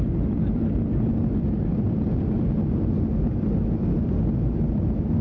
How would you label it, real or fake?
real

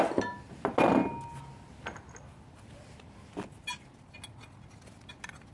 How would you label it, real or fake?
real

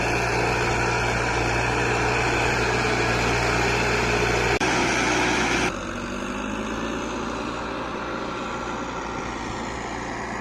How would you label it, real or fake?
real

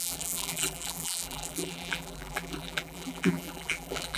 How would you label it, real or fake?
fake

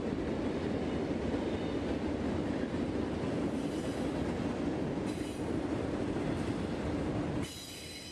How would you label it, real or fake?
real